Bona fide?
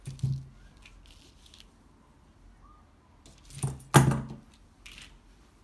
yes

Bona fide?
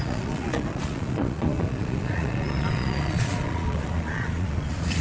no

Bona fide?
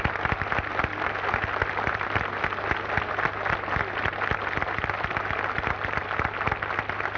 yes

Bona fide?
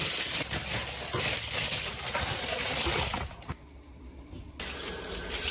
yes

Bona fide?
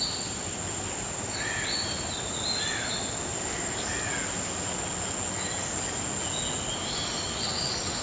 yes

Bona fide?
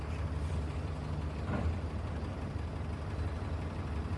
yes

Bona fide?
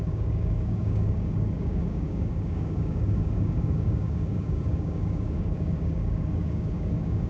no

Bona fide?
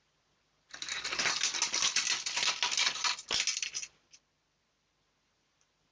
yes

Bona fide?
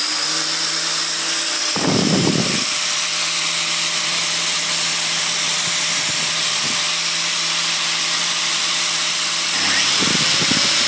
no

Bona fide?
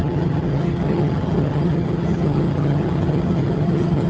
no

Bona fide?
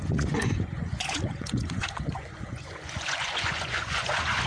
no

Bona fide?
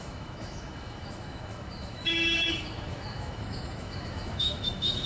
no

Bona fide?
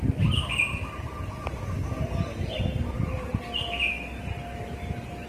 yes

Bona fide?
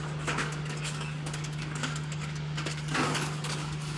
no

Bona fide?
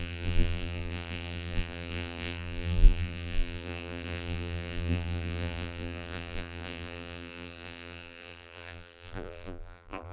no